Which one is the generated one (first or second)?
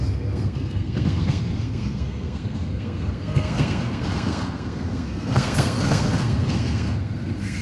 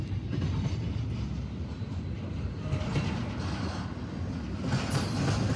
first